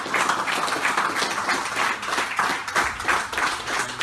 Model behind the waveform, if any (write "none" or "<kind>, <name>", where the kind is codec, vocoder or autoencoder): none